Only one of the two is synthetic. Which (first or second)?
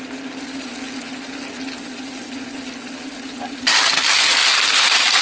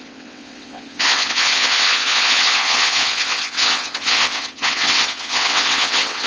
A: second